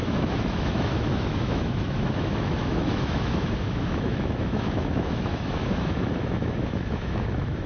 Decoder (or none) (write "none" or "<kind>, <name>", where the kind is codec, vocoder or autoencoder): autoencoder, DAC-VAE